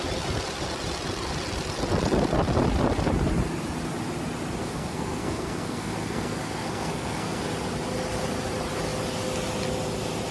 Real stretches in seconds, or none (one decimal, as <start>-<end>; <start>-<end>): 0.0-4.6; 7.4-10.3